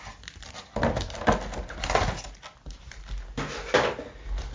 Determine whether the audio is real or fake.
real